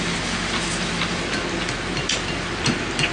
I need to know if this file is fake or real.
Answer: real